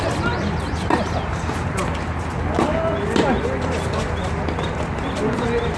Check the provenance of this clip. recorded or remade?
recorded